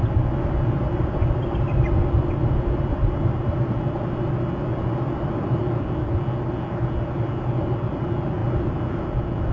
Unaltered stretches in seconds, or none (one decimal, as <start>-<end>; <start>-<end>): 0.0-9.5